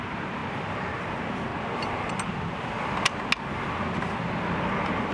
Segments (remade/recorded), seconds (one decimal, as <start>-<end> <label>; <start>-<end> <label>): 0.0-0.4 remade; 0.4-1.0 recorded; 1.0-1.5 remade; 1.5-4.6 recorded; 4.6-5.1 remade